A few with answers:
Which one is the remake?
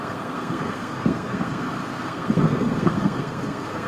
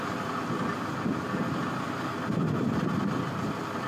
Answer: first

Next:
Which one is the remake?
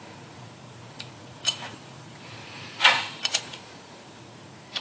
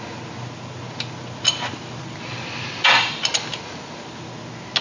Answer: first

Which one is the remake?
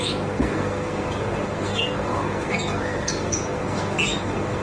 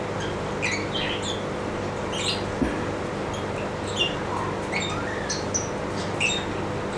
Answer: first